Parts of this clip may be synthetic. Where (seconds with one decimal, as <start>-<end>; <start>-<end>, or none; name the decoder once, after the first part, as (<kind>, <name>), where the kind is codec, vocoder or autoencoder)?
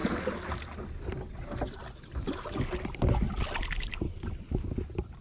none